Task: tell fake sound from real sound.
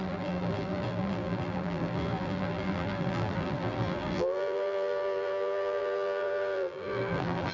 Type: fake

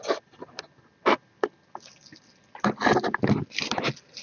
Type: real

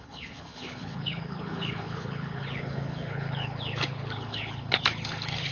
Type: fake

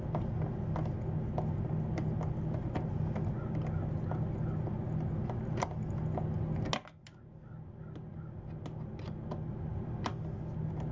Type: real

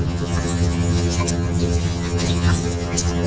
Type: fake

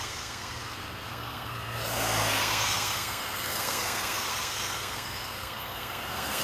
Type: fake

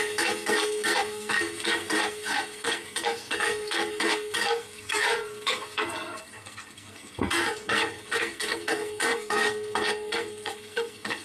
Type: fake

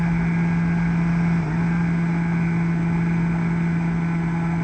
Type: real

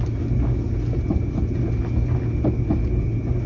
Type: real